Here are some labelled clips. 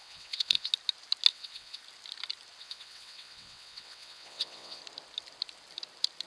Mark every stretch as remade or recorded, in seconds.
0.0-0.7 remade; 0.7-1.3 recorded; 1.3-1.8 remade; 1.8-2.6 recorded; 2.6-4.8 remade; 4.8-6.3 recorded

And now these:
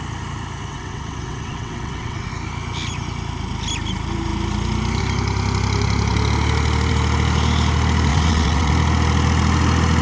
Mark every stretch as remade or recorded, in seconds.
0.0-0.7 recorded; 0.7-2.3 remade; 2.3-8.1 recorded; 8.1-8.7 remade; 8.7-10.0 recorded

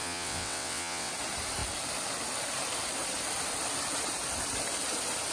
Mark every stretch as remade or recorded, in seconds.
0.0-1.1 remade; 1.1-5.3 recorded

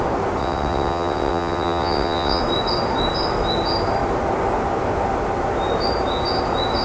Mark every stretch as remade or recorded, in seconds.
0.0-0.4 recorded; 0.4-2.4 remade; 2.4-6.8 recorded